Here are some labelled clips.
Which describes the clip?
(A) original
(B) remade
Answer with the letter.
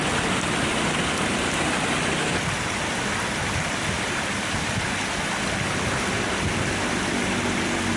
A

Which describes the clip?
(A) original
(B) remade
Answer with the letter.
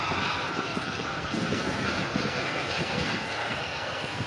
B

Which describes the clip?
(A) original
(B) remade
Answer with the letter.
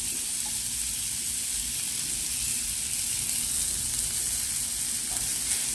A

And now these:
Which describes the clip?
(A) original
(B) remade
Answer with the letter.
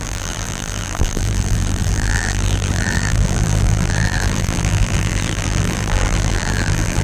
B